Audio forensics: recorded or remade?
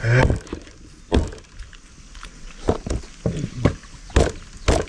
recorded